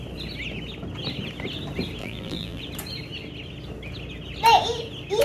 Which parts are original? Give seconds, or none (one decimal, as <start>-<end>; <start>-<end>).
0.0-2.0; 2.6-5.2